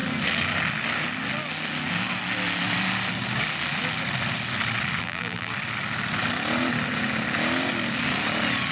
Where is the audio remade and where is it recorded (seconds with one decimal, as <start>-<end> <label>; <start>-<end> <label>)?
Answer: 0.0-5.0 recorded; 5.0-5.5 remade; 5.5-8.7 recorded